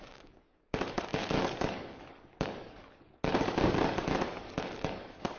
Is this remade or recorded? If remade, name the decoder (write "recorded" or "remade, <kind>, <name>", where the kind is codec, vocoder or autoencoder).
remade, codec, DAC